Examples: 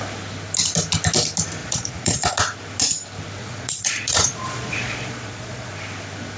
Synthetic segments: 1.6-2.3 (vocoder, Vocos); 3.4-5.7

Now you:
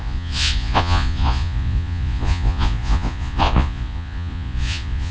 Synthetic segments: 0.0-5.1 (vocoder, Vocos)

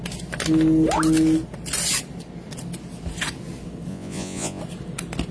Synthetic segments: 3.9-4.6 (vocoder, Vocos)

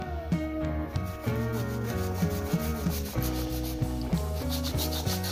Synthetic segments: none

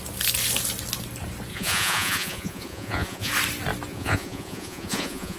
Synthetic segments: 1.5-3.3 (vocoder, Vocos); 3.9-5.4

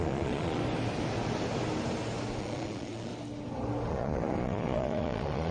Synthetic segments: 0.0-0.6 (vocoder, Vocos); 2.4-3.1; 3.9-5.5